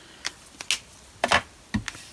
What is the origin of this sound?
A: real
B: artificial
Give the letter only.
A